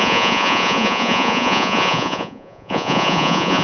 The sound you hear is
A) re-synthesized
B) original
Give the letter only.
A